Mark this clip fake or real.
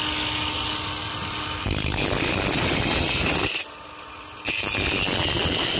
real